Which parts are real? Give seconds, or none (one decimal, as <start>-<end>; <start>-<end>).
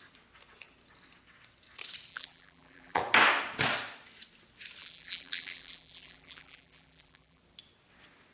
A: 0.0-2.1; 3.0-4.8; 7.4-8.3